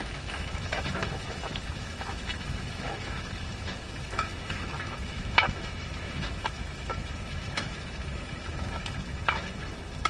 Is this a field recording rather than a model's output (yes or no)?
no